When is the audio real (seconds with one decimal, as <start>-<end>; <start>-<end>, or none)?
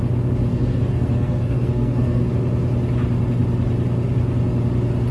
0.0-0.5; 2.3-5.1